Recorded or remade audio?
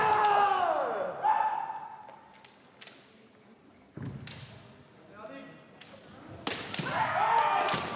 recorded